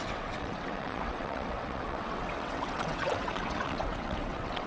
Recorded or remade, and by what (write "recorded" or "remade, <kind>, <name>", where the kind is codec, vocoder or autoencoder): remade, vocoder, WaveNeXt